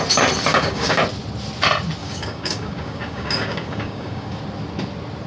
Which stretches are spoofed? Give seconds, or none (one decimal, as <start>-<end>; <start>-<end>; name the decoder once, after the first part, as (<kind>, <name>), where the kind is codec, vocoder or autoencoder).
0.5-1.0 (codec, DAC); 2.0-4.4